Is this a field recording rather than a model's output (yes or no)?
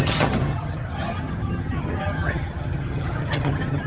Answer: no